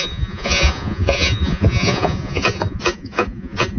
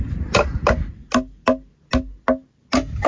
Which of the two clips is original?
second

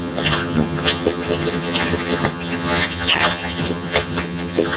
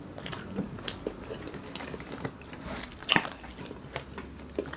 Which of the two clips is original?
second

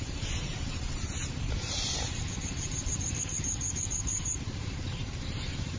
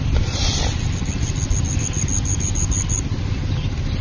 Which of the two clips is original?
second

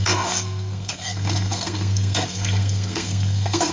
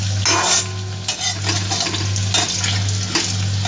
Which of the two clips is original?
second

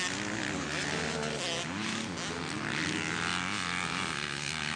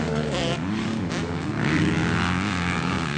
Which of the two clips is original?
first